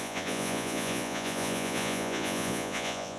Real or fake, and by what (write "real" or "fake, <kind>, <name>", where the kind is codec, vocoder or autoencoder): fake, vocoder, Vocos